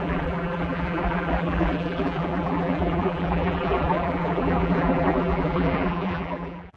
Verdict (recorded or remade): remade